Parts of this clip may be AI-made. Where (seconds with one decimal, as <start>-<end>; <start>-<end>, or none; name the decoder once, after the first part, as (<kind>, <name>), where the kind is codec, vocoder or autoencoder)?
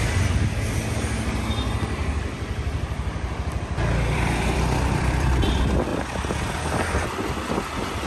2.0-5.5 (vocoder, BigVGAN v2)